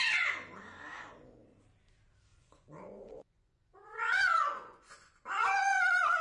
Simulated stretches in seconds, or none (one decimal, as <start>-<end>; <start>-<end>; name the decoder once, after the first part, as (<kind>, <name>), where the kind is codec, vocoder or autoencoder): 2.3-6.2 (vocoder, Vocos)